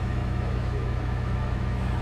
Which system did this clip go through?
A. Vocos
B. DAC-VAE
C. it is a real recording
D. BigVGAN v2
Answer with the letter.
B